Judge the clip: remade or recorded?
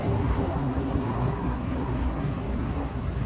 remade